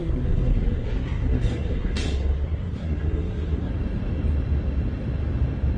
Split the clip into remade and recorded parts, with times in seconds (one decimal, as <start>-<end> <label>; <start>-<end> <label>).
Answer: 0.0-3.7 remade; 3.7-5.8 recorded